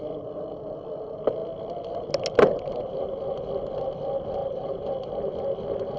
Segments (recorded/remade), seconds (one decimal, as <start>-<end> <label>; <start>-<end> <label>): 0.0-4.4 recorded; 4.4-4.9 remade; 4.9-6.0 recorded